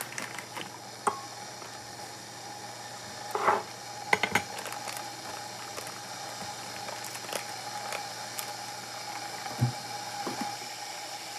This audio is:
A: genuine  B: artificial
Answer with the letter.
A